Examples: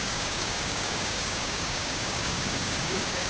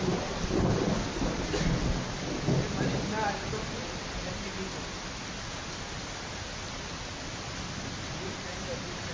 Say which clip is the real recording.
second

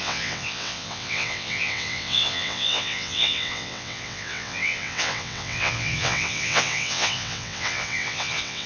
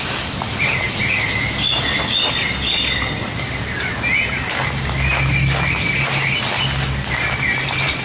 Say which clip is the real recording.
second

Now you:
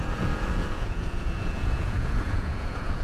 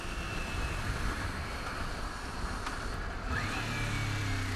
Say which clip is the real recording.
second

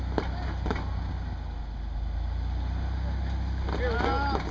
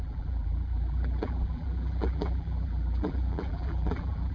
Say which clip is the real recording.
first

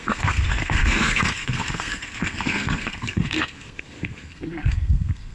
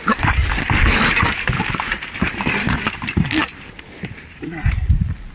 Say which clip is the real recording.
second